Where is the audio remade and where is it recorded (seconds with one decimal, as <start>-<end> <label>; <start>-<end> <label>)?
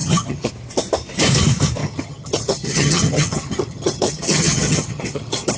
0.0-0.5 remade; 0.5-1.8 recorded; 1.8-5.6 remade